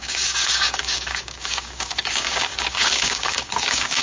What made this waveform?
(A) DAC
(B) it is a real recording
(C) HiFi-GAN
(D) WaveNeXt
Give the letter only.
A